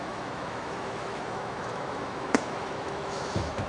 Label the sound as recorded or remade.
remade